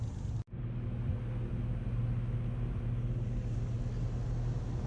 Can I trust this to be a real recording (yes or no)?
yes